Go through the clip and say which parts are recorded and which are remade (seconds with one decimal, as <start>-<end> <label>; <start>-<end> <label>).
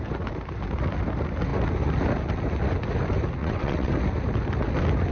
0.0-3.4 recorded; 3.4-3.9 remade; 3.9-5.1 recorded